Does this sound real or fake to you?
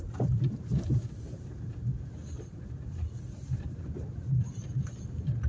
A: fake